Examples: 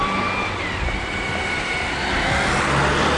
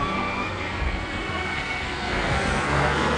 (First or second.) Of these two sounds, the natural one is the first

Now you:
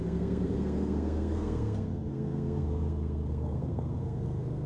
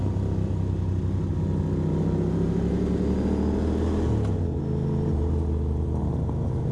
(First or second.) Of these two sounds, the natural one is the second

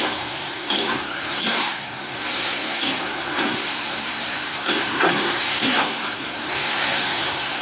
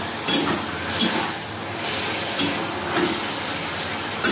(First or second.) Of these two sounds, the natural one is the second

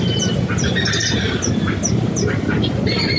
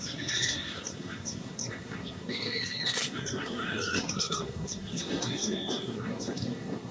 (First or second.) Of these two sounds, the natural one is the first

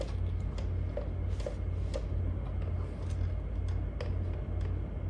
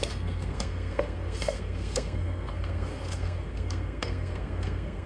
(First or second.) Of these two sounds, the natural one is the first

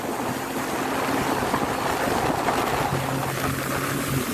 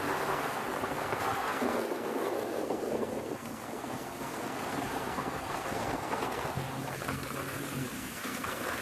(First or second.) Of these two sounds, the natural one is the first